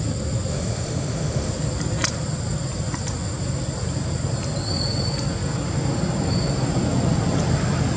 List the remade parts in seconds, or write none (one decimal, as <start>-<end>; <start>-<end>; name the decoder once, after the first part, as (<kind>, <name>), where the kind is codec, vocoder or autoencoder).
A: 0.5-1.5 (autoencoder, DAC-VAE)

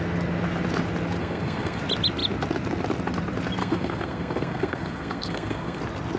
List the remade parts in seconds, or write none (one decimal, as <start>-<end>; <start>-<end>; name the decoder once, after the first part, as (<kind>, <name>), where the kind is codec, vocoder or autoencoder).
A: 1.2-1.8 (codec, SNAC); 3.6-5.8

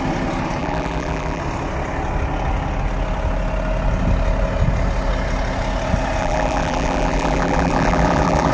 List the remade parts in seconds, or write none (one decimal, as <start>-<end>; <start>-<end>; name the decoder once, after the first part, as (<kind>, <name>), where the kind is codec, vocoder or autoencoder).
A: 0.6-1.4 (vocoder, BigVGAN v2); 6.2-8.5

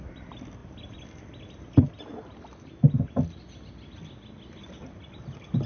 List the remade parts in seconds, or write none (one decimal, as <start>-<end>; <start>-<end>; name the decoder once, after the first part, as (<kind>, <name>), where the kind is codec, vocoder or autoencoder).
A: none

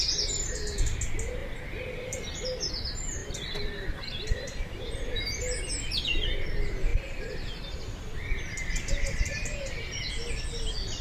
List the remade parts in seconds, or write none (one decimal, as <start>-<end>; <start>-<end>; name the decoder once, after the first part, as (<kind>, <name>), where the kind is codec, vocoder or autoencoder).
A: 1.4-2.7 (vocoder, BigVGAN v2); 3.2-5.0; 6.9-10.1